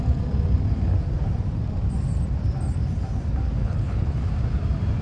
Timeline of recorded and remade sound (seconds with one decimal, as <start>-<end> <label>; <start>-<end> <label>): 0.0-3.6 recorded; 3.6-4.3 remade; 4.3-5.0 recorded